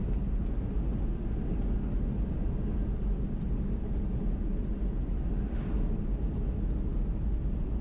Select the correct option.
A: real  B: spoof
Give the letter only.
A